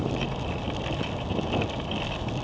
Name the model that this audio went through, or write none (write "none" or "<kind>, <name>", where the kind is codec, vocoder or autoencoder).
none